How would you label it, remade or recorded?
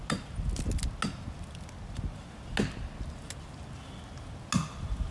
recorded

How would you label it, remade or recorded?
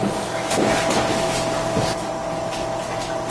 recorded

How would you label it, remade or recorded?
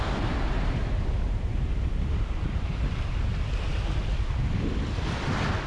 recorded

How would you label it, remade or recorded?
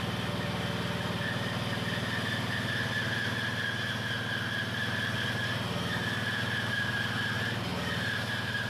recorded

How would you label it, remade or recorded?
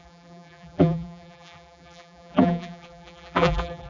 remade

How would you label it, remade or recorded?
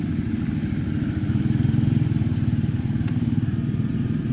remade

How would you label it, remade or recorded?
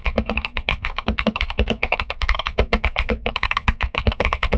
remade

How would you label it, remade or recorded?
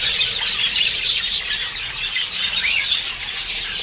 recorded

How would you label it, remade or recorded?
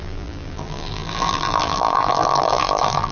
remade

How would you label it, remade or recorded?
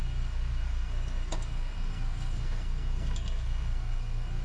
remade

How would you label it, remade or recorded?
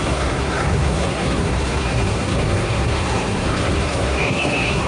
remade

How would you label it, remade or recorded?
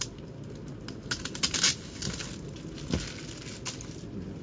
recorded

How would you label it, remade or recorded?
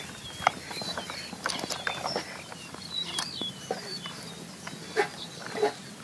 recorded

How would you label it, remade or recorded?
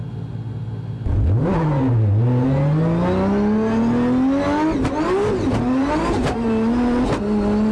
recorded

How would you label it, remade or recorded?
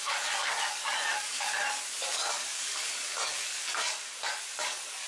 remade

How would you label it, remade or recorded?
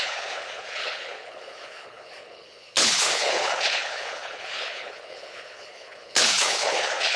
remade